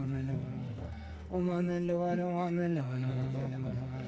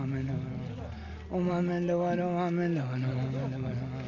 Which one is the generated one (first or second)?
first